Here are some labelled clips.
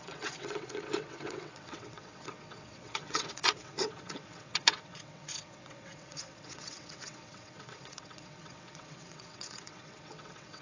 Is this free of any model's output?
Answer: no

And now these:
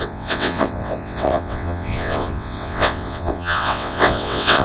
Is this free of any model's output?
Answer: no